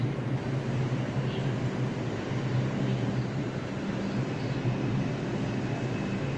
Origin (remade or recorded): recorded